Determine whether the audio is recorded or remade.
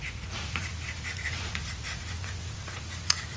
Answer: remade